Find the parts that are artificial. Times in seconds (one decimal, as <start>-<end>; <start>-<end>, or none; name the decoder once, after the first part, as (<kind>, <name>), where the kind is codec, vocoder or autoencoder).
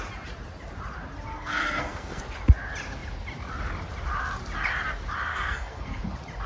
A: 1.3-2.2 (codec, SNAC); 5.3-6.0